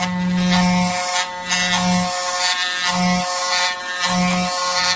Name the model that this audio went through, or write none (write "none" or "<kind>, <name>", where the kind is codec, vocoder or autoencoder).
none